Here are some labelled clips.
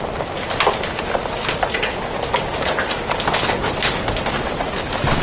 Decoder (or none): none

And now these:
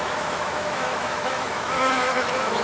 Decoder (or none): autoencoder, DAC-VAE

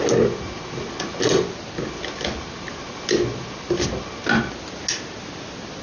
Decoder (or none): none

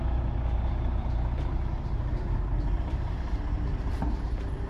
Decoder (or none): vocoder, BigVGAN v2